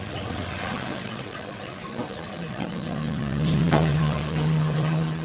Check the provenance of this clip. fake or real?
fake